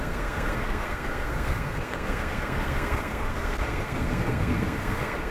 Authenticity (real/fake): fake